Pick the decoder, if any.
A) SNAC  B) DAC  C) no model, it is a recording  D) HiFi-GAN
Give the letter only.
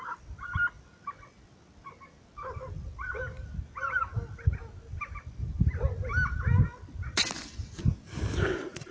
C